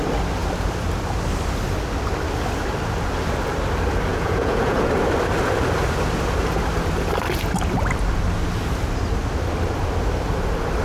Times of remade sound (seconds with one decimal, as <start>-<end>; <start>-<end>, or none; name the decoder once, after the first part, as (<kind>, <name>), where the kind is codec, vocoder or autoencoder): 4.1-4.9 (vocoder, Vocos)